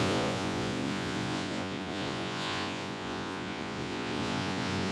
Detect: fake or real fake